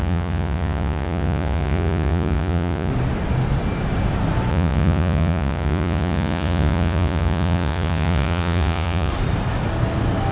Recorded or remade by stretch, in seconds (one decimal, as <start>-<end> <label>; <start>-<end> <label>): 0.0-2.9 remade; 2.9-4.5 recorded; 4.5-9.1 remade; 9.1-10.3 recorded